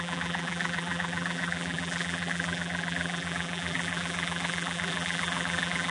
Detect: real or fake fake